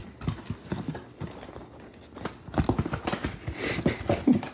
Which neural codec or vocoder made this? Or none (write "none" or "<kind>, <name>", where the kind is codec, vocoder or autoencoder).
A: none